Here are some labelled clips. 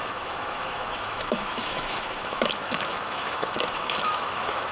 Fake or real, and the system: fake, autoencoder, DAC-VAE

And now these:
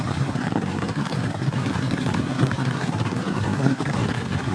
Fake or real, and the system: fake, codec, SNAC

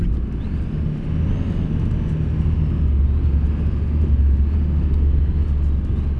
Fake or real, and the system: real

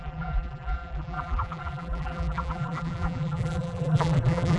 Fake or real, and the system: fake, vocoder, BigVGAN v2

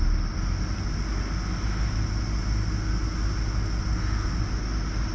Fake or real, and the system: real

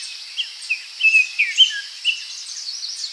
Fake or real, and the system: real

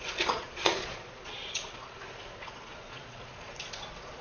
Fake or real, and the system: fake, vocoder, Vocos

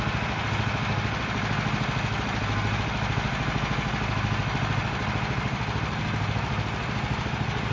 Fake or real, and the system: real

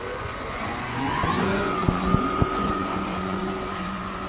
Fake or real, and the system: fake, vocoder, Vocos